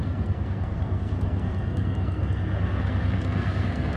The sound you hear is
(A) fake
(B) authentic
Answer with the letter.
A